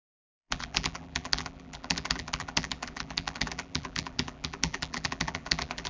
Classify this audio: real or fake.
fake